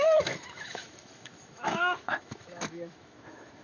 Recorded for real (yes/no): no